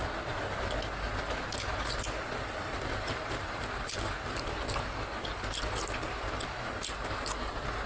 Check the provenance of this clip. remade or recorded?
recorded